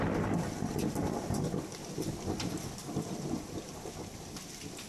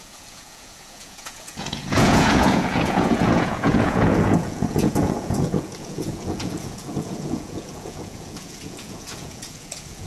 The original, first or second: first